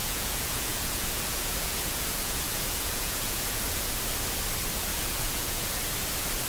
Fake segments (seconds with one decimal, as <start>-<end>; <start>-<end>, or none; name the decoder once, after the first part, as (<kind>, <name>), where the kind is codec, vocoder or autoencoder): 0.0-3.8 (vocoder, Vocos); 4.9-5.8